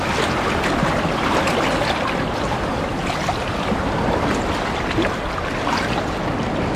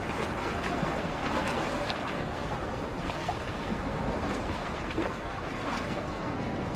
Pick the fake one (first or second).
second